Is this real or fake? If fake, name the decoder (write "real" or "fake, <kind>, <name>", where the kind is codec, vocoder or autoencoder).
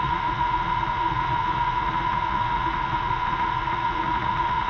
fake, vocoder, Vocos